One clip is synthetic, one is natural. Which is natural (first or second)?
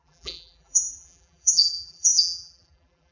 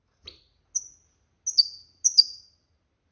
second